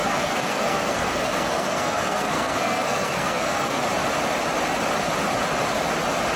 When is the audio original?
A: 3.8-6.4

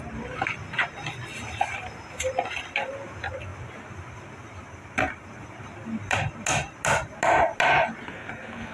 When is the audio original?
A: 0.0-8.7

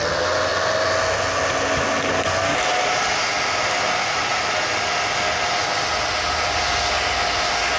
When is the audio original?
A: 0.0-7.8

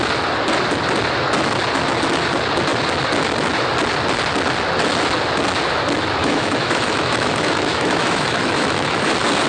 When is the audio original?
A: 0.0-6.2; 9.1-9.5

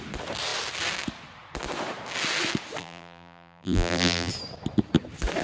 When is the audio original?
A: 0.0-2.8; 4.3-5.4

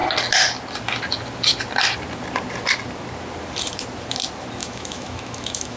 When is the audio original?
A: 0.0-4.6

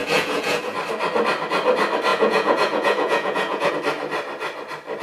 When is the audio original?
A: 0.6-2.1; 3.7-5.0